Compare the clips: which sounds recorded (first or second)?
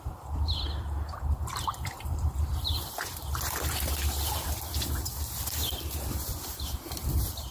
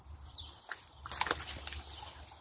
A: second